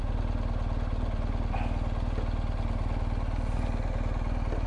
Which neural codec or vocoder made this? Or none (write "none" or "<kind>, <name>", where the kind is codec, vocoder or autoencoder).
none